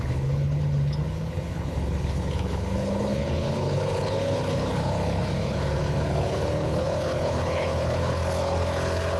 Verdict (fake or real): fake